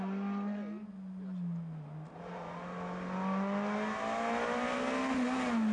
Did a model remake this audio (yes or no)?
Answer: no